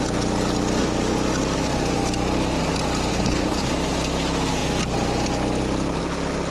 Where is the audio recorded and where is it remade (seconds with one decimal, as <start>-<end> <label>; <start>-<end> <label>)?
0.0-3.1 recorded; 3.1-3.7 remade; 3.7-6.5 recorded